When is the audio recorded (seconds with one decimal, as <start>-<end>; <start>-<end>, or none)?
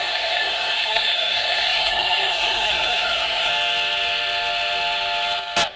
3.5-5.8